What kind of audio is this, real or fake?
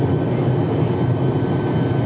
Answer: real